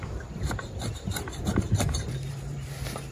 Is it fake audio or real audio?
real